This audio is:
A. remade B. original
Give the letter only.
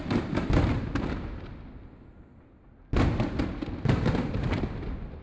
B